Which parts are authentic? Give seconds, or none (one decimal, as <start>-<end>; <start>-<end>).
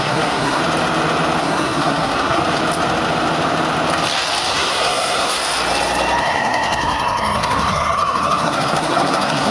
0.6-1.4; 2.4-4.5; 5.4-6.2